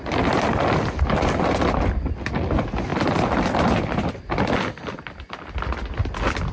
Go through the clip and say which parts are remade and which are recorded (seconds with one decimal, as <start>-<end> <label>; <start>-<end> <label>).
0.0-6.5 recorded